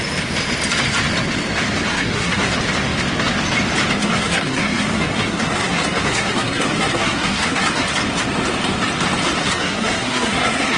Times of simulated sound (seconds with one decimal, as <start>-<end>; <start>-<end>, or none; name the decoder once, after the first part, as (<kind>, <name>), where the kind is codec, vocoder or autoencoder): 1.9-2.5 (codec, SNAC); 4.0-7.8; 9.4-10.8